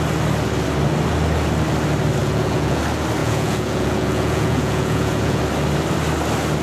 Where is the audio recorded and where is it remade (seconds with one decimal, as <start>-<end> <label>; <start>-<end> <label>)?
0.0-2.2 recorded; 2.2-2.8 remade; 2.8-3.2 recorded; 3.2-5.4 remade; 5.4-6.6 recorded